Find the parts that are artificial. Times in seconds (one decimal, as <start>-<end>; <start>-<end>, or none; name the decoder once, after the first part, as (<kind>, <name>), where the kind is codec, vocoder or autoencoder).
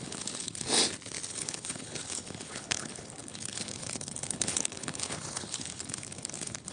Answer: 0.0-0.8 (codec, HILCodec); 1.3-6.7